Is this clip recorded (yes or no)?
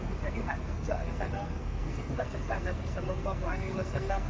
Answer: no